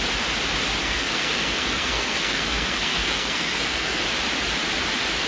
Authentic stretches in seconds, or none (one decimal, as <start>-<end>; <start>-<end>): 0.0-0.8; 4.0-5.3